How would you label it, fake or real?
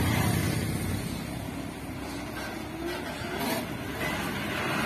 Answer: real